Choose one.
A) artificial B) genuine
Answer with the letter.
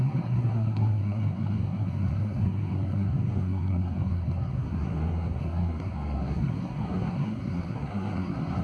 A